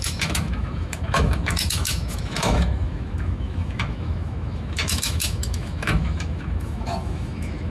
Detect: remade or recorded remade